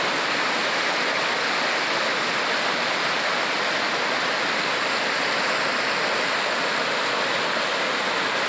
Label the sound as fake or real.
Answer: real